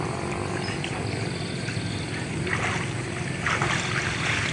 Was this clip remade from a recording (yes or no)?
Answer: no